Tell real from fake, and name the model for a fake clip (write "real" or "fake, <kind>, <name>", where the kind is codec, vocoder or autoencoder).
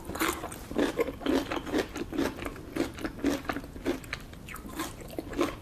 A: real